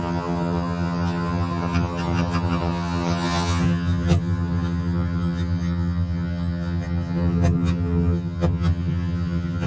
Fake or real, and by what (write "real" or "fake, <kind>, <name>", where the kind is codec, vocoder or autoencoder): fake, vocoder, HiFi-GAN